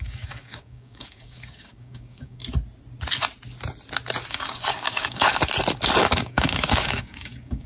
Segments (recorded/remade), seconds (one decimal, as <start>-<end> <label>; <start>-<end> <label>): 0.0-2.4 remade; 2.4-4.3 recorded; 4.3-5.3 remade; 5.3-6.0 recorded; 6.0-7.7 remade